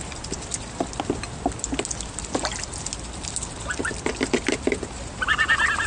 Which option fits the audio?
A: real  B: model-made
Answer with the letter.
A